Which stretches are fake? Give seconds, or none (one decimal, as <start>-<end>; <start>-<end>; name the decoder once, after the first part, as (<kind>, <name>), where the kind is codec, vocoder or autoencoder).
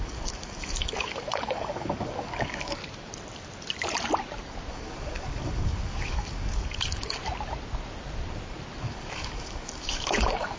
0.0-2.8 (codec, DAC); 4.7-7.2; 8.8-10.6